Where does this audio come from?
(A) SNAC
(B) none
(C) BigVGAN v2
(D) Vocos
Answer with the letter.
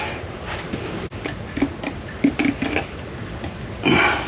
B